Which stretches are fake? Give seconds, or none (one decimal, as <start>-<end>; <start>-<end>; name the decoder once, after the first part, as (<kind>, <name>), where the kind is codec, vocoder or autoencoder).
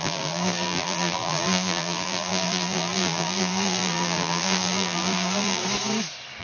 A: 0.0-5.6 (vocoder, BigVGAN v2)